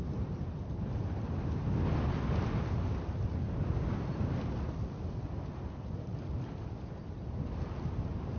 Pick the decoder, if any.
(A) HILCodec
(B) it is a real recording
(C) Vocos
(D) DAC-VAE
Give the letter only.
B